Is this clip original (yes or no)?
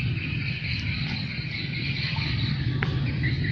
yes